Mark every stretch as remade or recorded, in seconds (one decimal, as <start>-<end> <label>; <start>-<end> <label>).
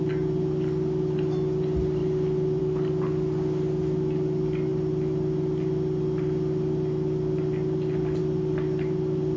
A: 0.0-9.4 recorded